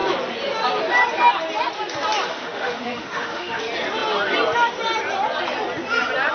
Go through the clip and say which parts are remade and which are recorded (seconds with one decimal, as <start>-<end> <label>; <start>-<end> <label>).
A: 0.0-2.3 recorded; 2.3-3.6 remade; 3.6-6.3 recorded

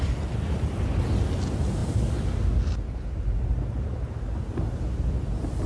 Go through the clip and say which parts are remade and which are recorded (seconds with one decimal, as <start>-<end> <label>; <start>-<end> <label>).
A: 0.0-5.7 recorded

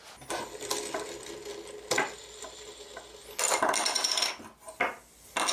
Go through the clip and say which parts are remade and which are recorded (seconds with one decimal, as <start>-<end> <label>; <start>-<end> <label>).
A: 0.0-5.5 recorded

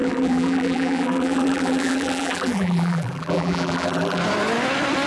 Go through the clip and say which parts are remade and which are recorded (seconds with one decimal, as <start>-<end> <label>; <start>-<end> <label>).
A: 0.0-4.2 remade; 4.2-5.1 recorded

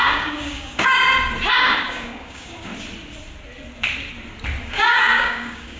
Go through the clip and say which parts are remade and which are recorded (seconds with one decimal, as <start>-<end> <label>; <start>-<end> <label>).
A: 0.0-1.0 remade; 1.0-1.5 recorded; 1.5-2.7 remade; 2.7-4.6 recorded; 4.6-5.8 remade

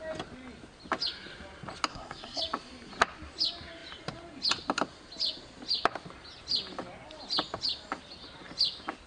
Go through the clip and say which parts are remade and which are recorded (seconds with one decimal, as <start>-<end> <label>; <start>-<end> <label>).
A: 0.0-1.9 recorded; 1.9-2.4 remade; 2.4-9.1 recorded